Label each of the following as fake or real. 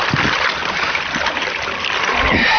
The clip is real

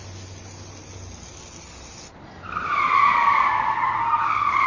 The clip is real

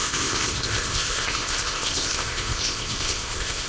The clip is fake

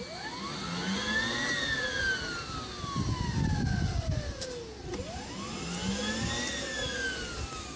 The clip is real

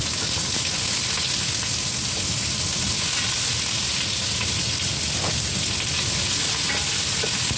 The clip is real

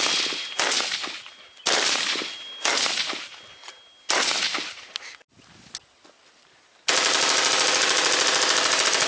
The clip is real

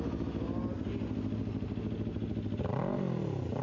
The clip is real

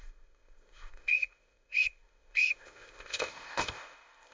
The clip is fake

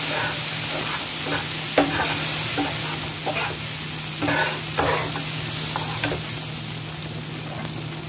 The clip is real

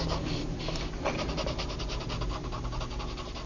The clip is real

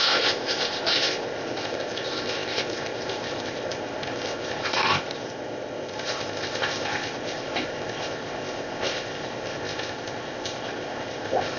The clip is fake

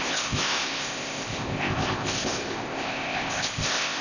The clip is fake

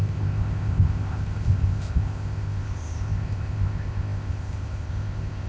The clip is fake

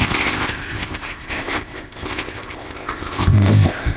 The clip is fake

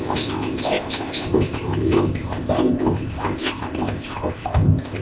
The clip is fake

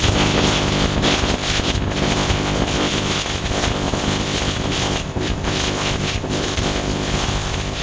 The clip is fake